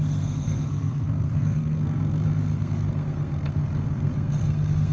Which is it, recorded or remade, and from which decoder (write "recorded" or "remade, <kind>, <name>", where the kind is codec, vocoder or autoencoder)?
remade, codec, SNAC